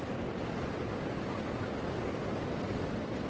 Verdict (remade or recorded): recorded